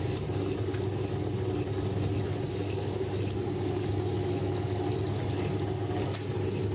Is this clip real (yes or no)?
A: yes